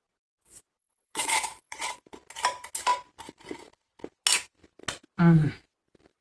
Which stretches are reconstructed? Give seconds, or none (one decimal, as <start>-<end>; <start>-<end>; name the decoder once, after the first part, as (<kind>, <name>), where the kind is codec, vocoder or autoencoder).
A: 0.8-2.0 (vocoder, WaveNeXt)